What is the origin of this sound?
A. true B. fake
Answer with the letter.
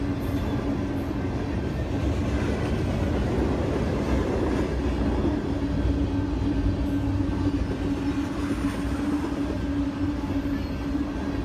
A